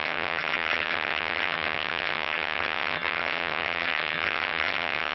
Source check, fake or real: fake